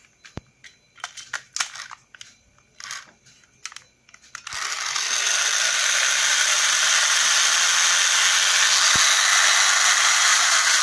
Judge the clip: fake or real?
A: real